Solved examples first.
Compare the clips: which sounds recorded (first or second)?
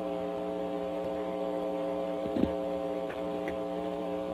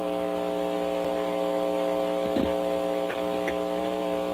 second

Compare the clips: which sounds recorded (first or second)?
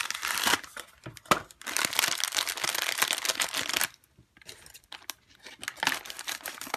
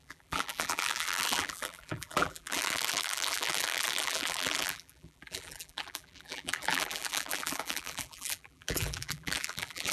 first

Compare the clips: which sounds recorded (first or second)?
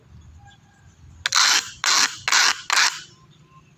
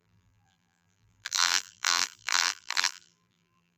first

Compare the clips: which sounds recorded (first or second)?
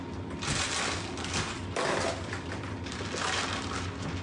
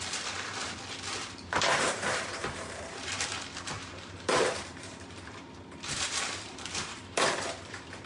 first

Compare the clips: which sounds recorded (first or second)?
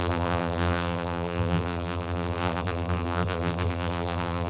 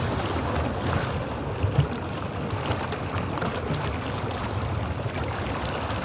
second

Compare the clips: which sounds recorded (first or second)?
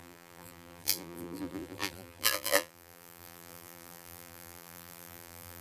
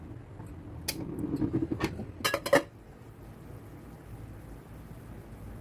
second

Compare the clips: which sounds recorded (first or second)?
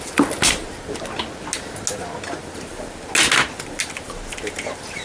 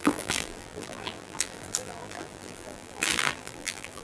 first